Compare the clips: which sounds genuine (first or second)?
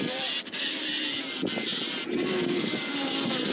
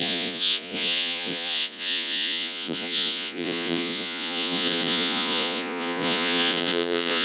first